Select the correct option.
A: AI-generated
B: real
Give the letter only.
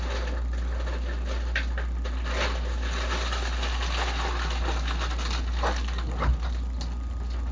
B